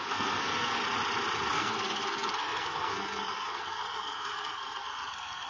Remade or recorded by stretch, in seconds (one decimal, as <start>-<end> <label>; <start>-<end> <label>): 0.0-0.8 remade; 0.8-1.5 recorded; 1.5-5.5 remade